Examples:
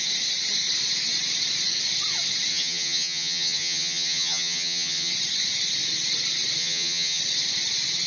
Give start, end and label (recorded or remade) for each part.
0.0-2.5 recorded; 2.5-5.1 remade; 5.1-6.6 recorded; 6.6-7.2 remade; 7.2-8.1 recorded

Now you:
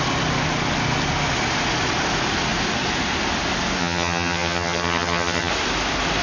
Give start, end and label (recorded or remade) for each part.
0.0-3.8 recorded; 3.8-5.5 remade; 5.5-6.2 recorded

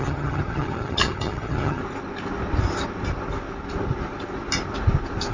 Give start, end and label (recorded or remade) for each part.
0.0-1.8 remade; 1.8-5.3 recorded

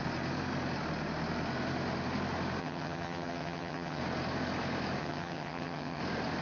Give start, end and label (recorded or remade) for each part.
0.0-2.6 recorded; 2.6-4.0 remade; 4.0-5.0 recorded; 5.0-6.0 remade; 6.0-6.4 recorded

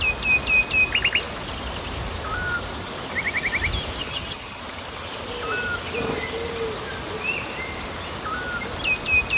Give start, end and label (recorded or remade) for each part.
0.0-4.0 recorded; 4.0-4.6 remade; 4.6-9.4 recorded

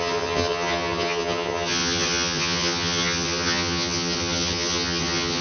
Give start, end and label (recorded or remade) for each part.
0.0-5.4 remade

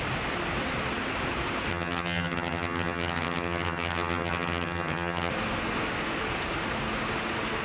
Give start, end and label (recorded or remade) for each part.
0.0-1.7 recorded; 1.7-5.3 remade; 5.3-7.6 recorded